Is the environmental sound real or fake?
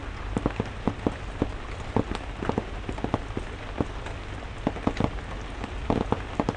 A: real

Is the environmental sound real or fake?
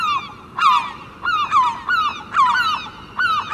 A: real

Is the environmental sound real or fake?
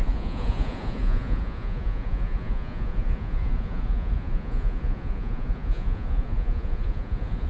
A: fake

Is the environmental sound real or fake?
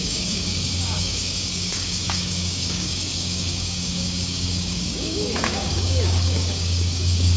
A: fake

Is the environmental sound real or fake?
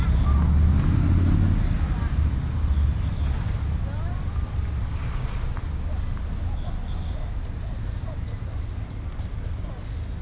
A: real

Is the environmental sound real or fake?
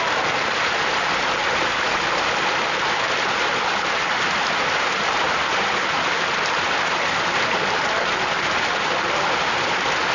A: real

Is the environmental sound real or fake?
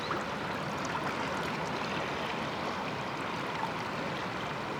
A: real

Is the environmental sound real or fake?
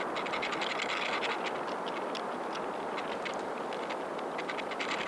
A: real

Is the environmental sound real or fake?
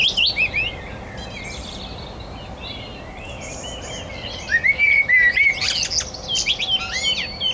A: real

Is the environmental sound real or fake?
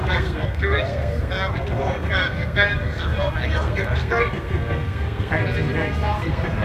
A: fake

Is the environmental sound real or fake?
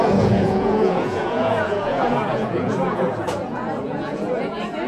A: fake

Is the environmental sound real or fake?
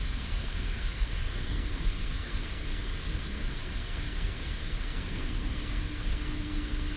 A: fake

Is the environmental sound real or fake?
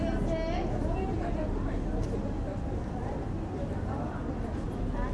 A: real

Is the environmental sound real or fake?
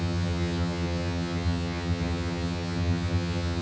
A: fake